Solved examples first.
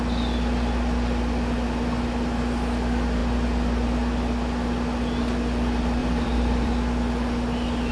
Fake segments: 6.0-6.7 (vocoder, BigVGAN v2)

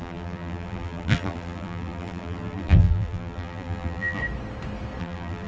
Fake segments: 0.0-4.2 (vocoder, BigVGAN v2); 5.0-5.5

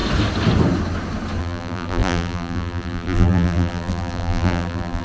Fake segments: 1.4-5.0 (vocoder, BigVGAN v2)

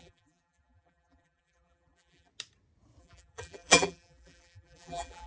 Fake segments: 0.0-2.3 (vocoder, BigVGAN v2); 3.0-5.3